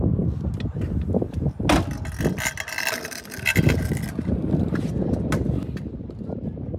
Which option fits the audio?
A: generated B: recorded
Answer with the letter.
B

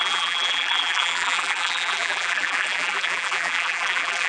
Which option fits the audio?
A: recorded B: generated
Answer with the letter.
B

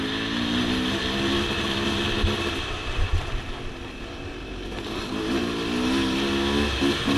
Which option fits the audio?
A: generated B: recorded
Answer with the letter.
B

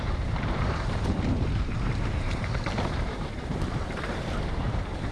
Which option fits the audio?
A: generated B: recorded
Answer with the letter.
A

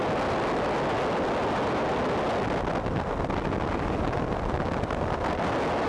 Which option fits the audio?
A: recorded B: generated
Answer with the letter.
A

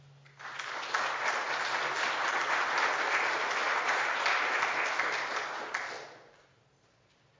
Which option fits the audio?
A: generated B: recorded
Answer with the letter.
B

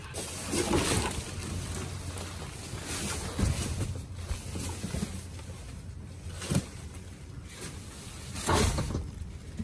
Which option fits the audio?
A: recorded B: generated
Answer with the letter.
A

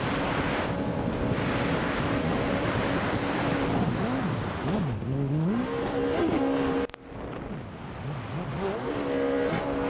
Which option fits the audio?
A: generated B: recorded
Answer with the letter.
B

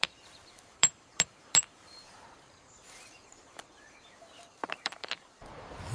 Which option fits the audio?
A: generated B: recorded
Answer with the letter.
A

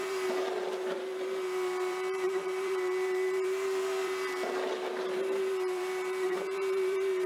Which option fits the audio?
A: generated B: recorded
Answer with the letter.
A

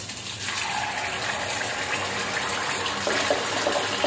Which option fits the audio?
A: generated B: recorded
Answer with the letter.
B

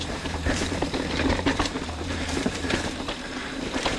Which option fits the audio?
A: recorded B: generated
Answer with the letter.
B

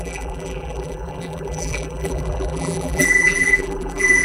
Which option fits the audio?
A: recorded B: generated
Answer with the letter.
B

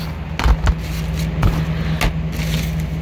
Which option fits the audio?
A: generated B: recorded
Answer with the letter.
B